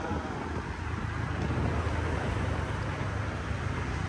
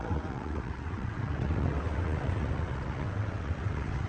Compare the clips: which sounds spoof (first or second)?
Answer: second